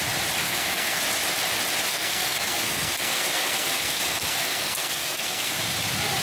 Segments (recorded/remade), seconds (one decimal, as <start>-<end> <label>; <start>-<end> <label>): 0.0-0.4 recorded; 0.4-1.0 remade; 1.0-1.9 recorded; 1.9-5.6 remade; 5.6-6.2 recorded